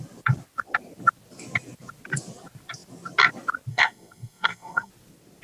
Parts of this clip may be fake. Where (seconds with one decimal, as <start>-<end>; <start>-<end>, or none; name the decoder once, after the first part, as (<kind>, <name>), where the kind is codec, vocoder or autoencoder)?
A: 3.7-4.9 (codec, SNAC)